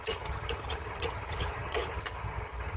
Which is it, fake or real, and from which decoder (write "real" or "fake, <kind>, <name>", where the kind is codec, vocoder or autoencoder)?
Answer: fake, vocoder, HiFi-GAN